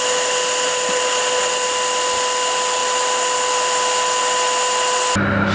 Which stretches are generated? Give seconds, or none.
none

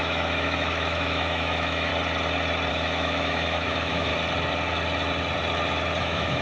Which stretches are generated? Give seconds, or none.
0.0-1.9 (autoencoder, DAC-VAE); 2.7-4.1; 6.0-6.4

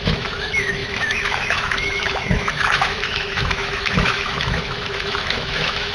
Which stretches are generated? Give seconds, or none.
0.0-5.9 (autoencoder, DAC-VAE)

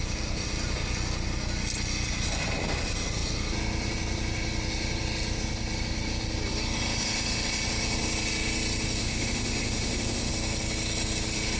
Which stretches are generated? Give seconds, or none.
9.0-10.3 (autoencoder, DAC-VAE)